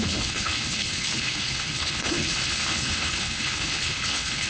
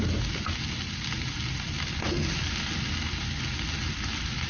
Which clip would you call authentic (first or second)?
second